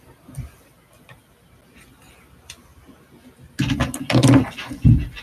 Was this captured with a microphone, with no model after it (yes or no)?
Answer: yes